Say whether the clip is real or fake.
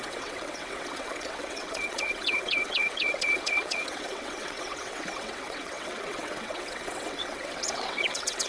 fake